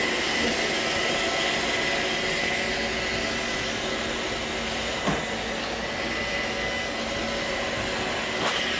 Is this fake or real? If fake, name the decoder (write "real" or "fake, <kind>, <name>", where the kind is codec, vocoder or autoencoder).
real